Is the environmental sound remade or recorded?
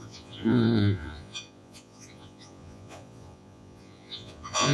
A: remade